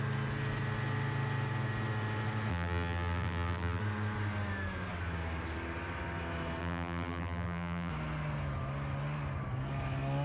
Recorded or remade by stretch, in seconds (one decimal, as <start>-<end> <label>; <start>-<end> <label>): 0.0-2.5 recorded; 2.5-3.8 remade; 3.8-6.6 recorded; 6.6-7.9 remade; 7.9-10.2 recorded